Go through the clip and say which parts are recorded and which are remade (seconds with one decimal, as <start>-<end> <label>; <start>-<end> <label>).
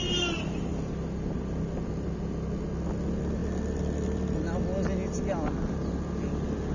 0.0-6.7 recorded